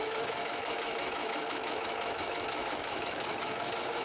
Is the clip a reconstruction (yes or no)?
yes